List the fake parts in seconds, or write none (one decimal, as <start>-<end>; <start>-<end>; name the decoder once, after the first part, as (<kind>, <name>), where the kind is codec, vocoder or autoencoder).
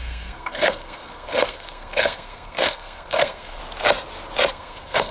0.0-3.6 (codec, SNAC); 4.5-5.1